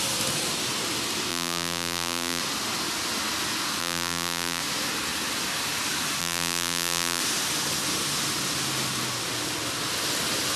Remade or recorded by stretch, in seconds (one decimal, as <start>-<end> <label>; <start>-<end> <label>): 0.0-1.3 recorded; 1.3-2.4 remade; 2.4-3.8 recorded; 3.8-4.6 remade; 4.6-6.2 recorded; 6.2-7.2 remade; 7.2-10.6 recorded